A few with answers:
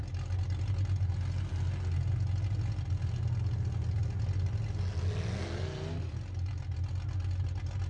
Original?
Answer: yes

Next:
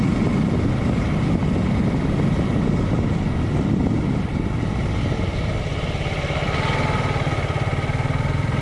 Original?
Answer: yes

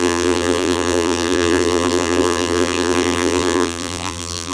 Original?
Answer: no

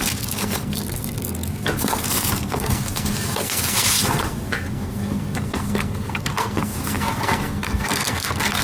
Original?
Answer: no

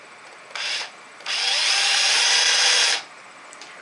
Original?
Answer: yes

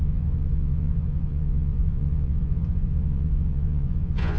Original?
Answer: no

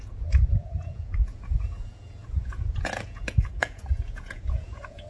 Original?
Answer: no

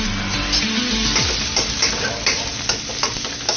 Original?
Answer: yes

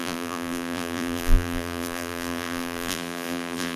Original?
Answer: no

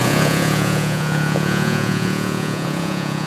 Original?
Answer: no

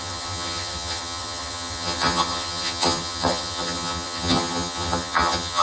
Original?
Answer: no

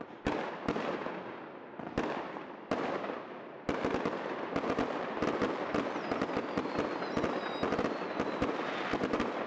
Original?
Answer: yes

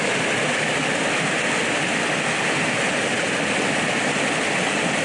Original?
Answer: yes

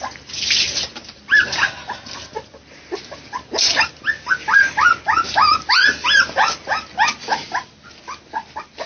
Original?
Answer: yes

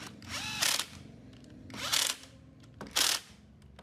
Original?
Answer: yes